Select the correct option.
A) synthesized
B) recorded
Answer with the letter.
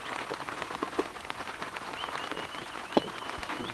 A